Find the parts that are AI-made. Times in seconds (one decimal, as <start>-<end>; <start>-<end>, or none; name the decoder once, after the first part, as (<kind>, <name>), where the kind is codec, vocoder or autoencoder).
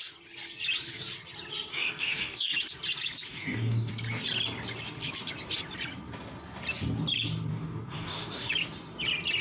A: 1.7-2.5 (codec, DAC); 3.3-3.9; 7.5-8.5